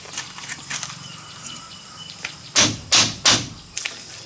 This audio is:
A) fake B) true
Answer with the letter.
B